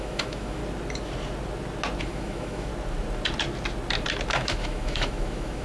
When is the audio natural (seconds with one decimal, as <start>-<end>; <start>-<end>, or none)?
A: 0.6-2.0; 2.7-4.3